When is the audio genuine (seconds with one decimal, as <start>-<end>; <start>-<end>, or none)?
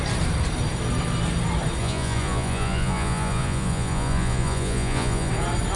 0.0-1.8; 5.3-5.8